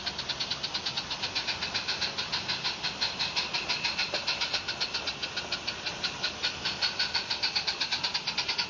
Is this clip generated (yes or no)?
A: no